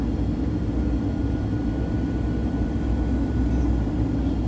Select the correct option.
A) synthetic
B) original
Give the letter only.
B